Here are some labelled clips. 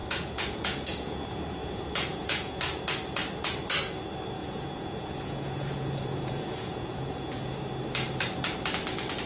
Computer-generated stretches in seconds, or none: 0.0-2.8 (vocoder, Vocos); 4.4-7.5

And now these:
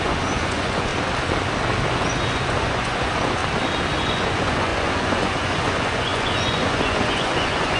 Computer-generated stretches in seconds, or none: 0.0-0.9 (vocoder, Vocos); 1.9-3.4; 3.9-7.8

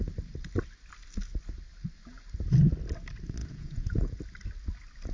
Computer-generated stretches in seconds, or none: 3.4-4.2 (vocoder, Vocos)

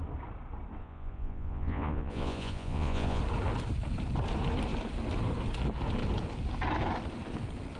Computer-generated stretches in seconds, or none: 0.8-3.2 (vocoder, Vocos)

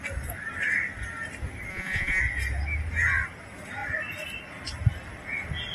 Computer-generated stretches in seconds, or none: 1.7-2.2 (vocoder, Vocos)

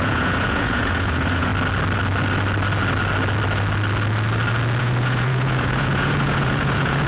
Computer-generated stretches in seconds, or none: 0.0-1.5 (vocoder, Vocos); 4.8-7.1